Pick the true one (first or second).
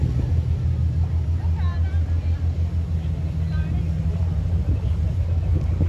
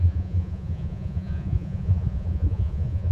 first